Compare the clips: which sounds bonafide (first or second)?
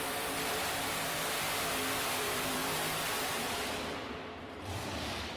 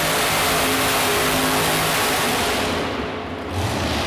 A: second